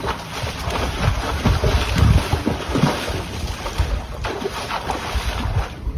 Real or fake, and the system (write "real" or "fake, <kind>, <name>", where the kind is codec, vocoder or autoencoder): real